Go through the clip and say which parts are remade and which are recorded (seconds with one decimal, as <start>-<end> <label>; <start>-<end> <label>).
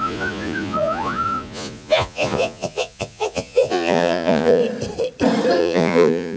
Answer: 0.0-4.6 remade; 4.6-5.6 recorded; 5.6-6.4 remade